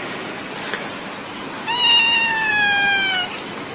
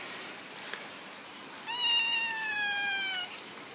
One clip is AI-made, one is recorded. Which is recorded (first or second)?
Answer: first